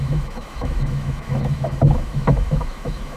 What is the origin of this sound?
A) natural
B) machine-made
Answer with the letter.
B